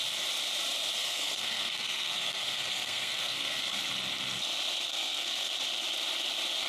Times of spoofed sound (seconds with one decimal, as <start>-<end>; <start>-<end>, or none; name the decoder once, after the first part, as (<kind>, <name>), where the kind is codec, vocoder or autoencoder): 1.0-3.8 (codec, SNAC); 4.9-5.5